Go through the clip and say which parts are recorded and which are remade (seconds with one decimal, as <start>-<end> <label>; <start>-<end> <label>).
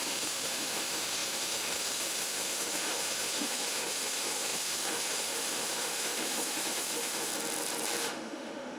0.0-7.3 remade; 7.3-8.0 recorded; 8.0-8.8 remade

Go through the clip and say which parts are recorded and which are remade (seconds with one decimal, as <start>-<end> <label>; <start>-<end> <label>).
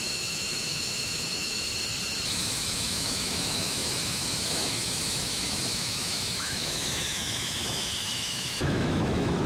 0.0-1.7 remade; 1.7-2.3 recorded; 2.3-9.5 remade